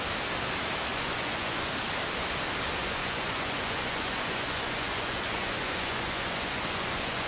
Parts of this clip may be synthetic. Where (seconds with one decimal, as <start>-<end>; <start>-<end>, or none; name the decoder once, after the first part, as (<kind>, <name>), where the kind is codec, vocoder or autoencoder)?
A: 0.9-1.7 (vocoder, Vocos); 2.8-7.3